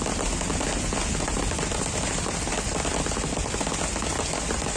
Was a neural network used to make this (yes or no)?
no